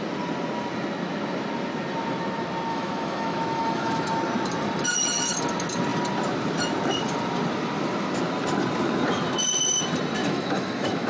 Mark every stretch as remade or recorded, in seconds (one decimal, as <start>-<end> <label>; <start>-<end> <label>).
0.0-2.7 recorded; 2.7-4.1 remade; 4.1-10.2 recorded; 10.2-11.1 remade